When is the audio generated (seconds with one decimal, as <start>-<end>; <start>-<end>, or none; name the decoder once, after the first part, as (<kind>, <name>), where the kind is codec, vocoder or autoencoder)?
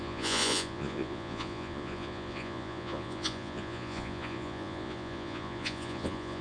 0.0-6.4 (vocoder, Vocos)